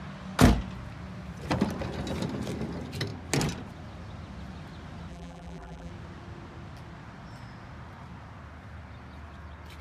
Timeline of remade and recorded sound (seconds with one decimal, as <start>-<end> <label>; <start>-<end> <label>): 0.0-5.1 recorded; 5.1-5.9 remade; 5.9-9.8 recorded